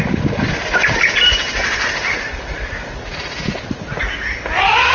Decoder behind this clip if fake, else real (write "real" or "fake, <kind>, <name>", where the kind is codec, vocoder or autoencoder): real